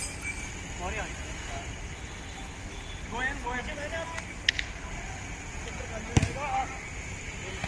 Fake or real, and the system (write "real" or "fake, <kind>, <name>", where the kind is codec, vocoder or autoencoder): real